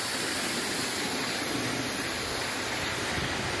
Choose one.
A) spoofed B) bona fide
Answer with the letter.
B